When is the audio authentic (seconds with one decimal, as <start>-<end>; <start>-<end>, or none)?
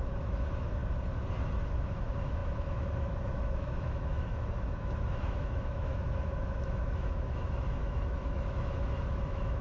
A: 0.8-1.7